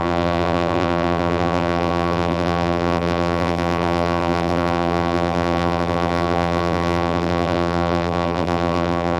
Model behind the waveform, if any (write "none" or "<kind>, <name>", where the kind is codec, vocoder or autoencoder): vocoder, BigVGAN v2